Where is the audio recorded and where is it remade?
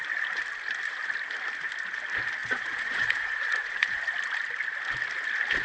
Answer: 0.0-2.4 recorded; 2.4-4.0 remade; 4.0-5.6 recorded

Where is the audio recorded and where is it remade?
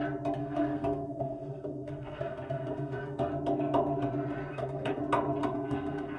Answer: 0.0-0.4 recorded; 0.4-3.3 remade; 3.3-4.5 recorded; 4.5-5.0 remade; 5.0-5.4 recorded; 5.4-6.2 remade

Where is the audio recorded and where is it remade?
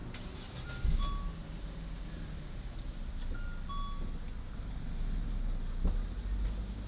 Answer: 0.0-6.9 recorded